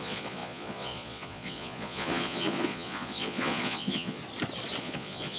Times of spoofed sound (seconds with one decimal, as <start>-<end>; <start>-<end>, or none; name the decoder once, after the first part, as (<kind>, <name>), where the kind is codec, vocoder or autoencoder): 0.0-4.2 (vocoder, Vocos); 4.8-5.4